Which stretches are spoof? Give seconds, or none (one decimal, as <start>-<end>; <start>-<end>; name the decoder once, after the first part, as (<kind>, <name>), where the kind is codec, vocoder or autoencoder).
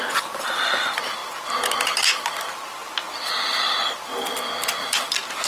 none